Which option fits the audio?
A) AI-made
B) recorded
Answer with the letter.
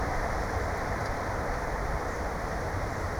A